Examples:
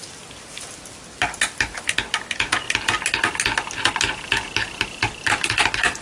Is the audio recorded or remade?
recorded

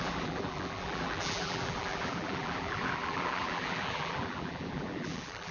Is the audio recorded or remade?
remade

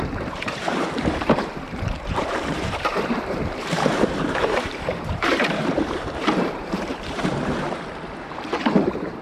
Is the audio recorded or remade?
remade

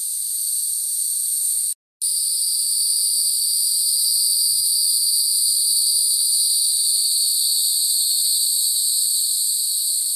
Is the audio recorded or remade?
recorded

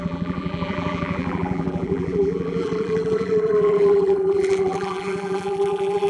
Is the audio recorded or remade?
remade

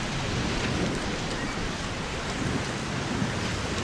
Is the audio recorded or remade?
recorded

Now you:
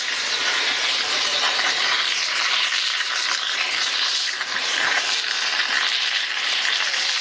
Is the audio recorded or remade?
remade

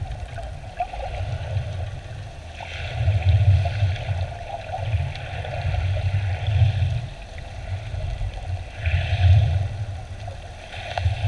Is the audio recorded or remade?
recorded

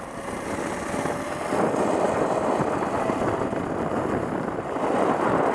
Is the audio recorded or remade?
remade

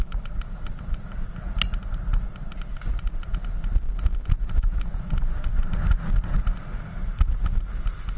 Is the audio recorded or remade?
recorded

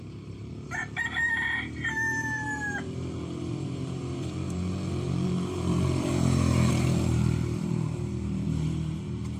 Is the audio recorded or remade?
remade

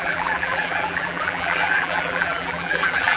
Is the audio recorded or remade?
remade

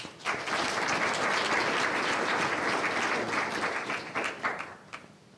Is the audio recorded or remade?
recorded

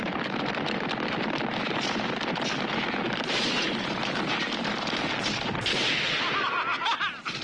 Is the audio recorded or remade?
recorded